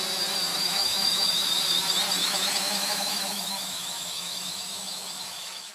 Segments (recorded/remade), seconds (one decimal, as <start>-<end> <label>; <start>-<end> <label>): 0.0-0.5 recorded; 0.5-1.5 remade; 1.5-2.2 recorded; 2.2-5.7 remade